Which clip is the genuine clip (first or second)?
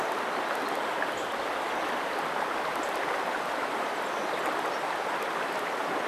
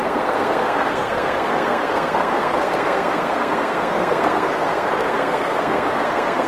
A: first